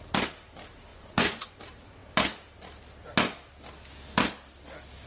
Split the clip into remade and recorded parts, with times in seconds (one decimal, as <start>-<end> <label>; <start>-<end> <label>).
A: 0.0-0.9 recorded; 0.9-1.6 remade; 1.6-5.1 recorded